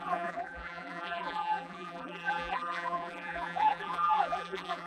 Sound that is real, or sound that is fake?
fake